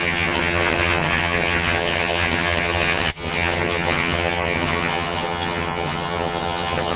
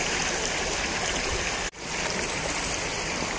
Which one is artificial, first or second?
first